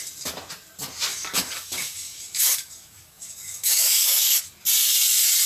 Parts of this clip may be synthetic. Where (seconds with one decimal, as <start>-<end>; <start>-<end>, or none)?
1.1-4.4